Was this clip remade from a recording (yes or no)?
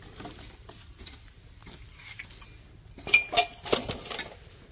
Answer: no